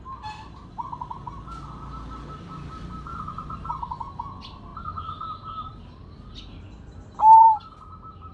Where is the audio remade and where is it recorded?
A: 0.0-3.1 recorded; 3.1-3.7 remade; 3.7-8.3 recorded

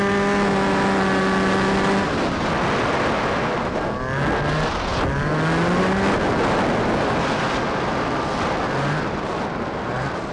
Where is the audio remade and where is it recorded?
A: 0.0-10.3 recorded

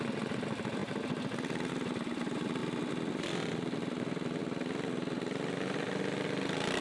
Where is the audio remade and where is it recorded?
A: 0.0-0.8 remade; 0.8-1.7 recorded; 1.7-2.6 remade; 2.6-3.1 recorded; 3.1-4.4 remade; 4.4-6.8 recorded

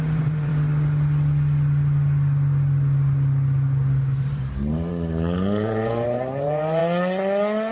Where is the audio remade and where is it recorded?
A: 0.0-0.5 remade; 0.5-4.2 recorded; 4.2-6.8 remade; 6.8-7.7 recorded

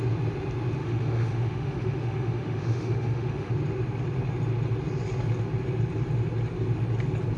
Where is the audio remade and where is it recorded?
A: 0.0-0.8 recorded; 0.8-3.5 remade; 3.5-7.4 recorded

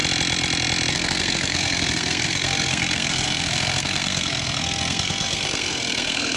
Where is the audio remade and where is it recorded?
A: 0.0-0.9 recorded; 0.9-6.4 remade